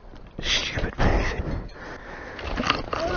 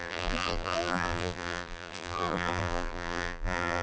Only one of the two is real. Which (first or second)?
first